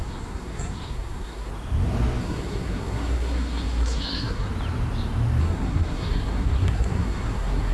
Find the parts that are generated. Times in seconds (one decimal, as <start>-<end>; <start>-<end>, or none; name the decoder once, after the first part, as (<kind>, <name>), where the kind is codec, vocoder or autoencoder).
0.0-1.5 (codec, SNAC); 2.2-4.5; 5.4-7.7